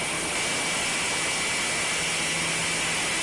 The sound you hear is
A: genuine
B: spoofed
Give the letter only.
A